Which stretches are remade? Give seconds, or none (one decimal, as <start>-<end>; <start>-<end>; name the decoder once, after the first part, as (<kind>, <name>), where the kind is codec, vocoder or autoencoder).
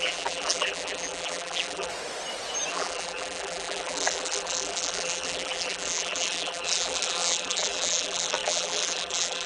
0.0-1.9 (vocoder, BigVGAN v2); 2.7-9.5